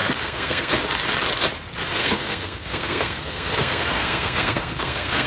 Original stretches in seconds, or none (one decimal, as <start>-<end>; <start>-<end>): 0.7-2.0